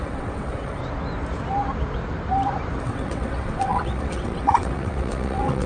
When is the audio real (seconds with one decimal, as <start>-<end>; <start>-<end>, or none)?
0.8-2.8